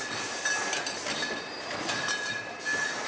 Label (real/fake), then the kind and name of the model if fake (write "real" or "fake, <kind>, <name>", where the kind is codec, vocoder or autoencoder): real